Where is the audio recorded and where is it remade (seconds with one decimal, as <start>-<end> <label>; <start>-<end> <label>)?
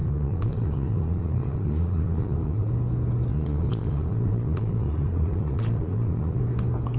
0.0-2.7 remade; 2.7-3.3 recorded; 3.3-6.4 remade; 6.4-7.0 recorded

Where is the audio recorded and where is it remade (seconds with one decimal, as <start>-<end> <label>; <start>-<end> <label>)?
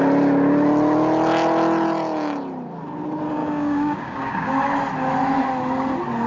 0.0-3.4 recorded; 3.4-4.5 remade; 4.5-6.3 recorded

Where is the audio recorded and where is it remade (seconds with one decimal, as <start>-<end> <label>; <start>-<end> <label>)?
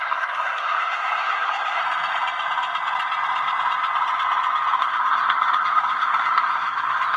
0.0-1.8 remade; 1.8-4.8 recorded; 4.8-7.2 remade